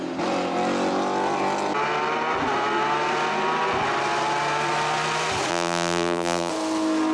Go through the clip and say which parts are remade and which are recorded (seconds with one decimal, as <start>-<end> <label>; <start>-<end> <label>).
0.0-5.5 recorded; 5.5-6.5 remade; 6.5-7.1 recorded